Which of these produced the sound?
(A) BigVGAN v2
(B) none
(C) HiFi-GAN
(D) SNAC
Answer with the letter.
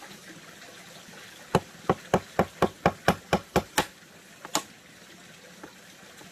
B